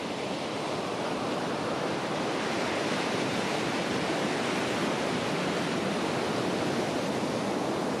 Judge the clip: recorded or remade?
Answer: remade